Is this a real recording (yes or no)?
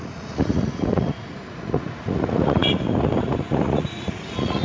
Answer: no